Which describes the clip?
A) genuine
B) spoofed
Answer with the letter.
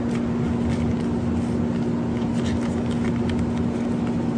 A